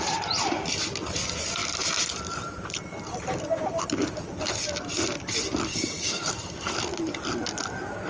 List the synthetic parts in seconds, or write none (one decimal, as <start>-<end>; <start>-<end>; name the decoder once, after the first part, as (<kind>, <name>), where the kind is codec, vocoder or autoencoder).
5.7-6.3 (codec, DAC)